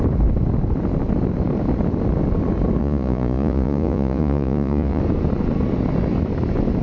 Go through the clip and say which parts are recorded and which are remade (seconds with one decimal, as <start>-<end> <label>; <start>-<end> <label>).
0.0-2.8 recorded; 2.8-5.0 remade; 5.0-6.8 recorded